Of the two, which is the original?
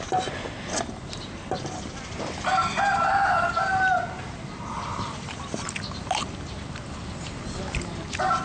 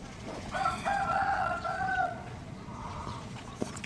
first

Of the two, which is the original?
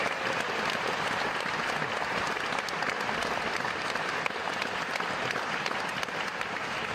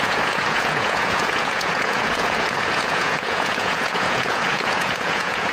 first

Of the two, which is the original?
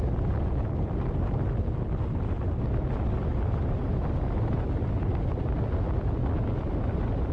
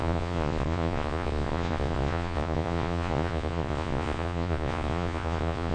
first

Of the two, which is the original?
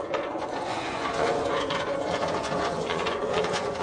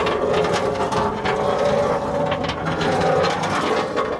second